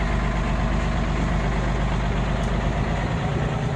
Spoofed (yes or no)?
no